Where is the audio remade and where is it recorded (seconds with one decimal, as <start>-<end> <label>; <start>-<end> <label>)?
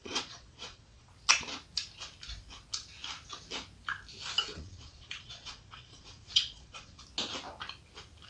0.0-1.1 remade; 1.1-4.5 recorded; 4.5-7.0 remade; 7.0-8.3 recorded